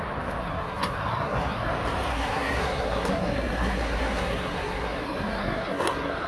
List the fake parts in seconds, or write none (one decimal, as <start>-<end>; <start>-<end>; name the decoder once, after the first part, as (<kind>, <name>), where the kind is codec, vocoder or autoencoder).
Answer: 0.4-1.7 (codec, SNAC); 2.1-6.3